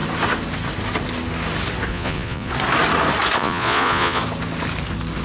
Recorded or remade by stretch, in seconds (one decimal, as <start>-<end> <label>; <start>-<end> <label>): 0.0-1.9 recorded; 1.9-2.5 remade; 2.5-3.4 recorded; 3.4-4.2 remade; 4.2-5.2 recorded